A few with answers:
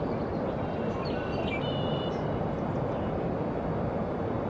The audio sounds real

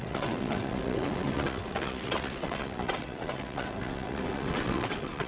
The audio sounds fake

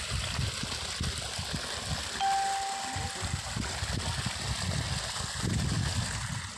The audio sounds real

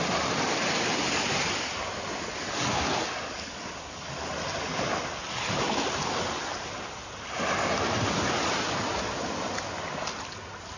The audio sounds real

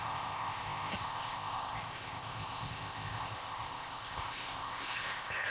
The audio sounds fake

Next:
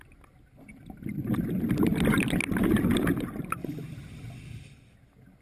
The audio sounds real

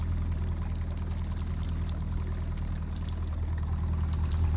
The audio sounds real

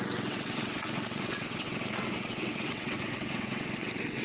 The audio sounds fake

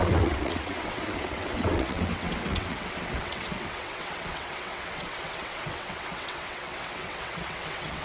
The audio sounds fake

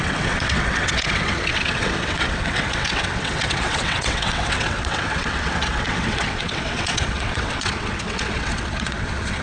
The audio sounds fake